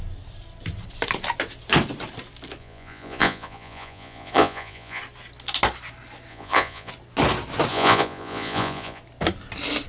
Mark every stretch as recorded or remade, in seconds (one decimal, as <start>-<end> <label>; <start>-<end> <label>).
0.0-2.6 recorded; 2.6-5.0 remade; 5.0-6.3 recorded; 6.3-6.9 remade; 6.9-7.7 recorded; 7.7-9.0 remade; 9.0-9.9 recorded

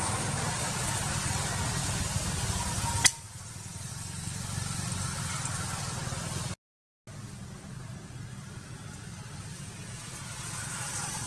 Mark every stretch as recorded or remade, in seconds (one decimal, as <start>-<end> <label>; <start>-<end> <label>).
0.0-11.3 recorded